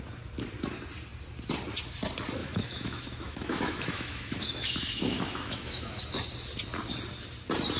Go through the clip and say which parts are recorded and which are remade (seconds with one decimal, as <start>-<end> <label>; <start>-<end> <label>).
0.0-2.4 recorded; 2.4-6.0 remade; 6.0-7.8 recorded